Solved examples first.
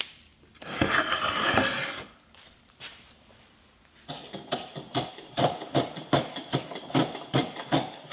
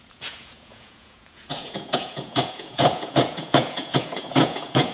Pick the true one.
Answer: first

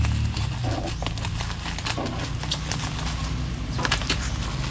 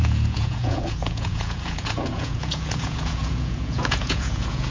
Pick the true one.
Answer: first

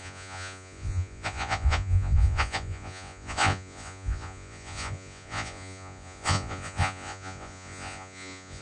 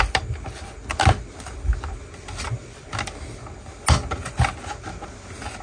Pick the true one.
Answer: second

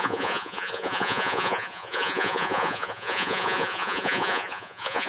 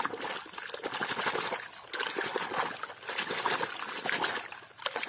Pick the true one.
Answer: second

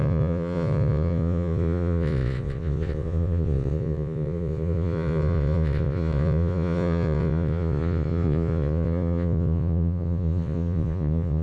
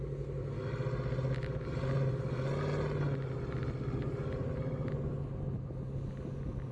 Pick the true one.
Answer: second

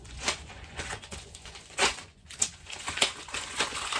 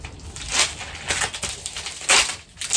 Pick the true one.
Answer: second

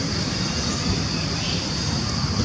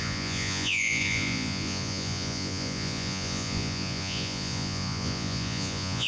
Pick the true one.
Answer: first